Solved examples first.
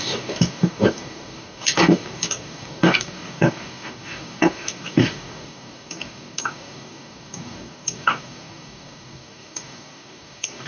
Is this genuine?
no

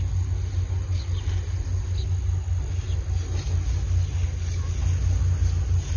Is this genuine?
yes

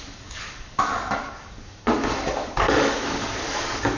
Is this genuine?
no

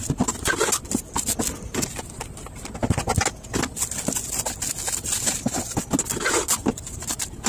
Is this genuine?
yes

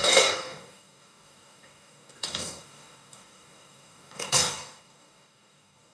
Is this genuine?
no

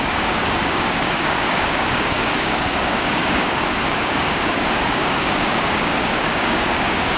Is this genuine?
no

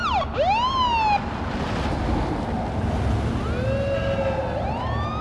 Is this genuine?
yes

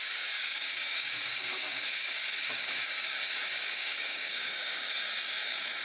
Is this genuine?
no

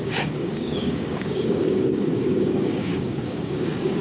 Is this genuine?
no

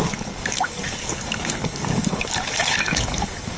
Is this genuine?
no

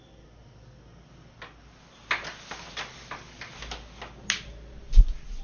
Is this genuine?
yes